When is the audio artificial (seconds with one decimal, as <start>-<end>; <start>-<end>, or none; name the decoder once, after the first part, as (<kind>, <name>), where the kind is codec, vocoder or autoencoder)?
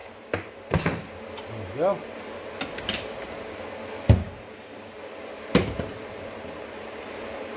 4.2-5.0 (codec, DAC)